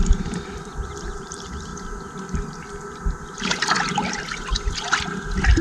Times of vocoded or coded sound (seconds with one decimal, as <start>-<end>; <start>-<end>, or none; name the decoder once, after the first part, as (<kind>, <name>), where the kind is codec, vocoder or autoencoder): none